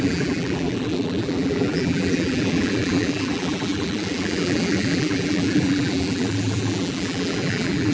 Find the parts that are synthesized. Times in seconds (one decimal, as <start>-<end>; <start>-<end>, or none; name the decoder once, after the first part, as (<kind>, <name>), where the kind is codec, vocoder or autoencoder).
0.0-7.9 (vocoder, BigVGAN v2)